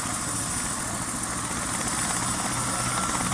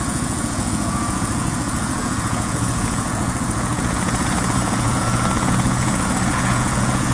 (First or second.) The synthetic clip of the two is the second